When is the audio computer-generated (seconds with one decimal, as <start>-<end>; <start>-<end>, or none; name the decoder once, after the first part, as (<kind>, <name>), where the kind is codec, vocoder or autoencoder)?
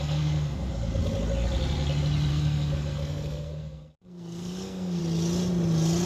0.0-1.0 (codec, SNAC); 2.3-5.0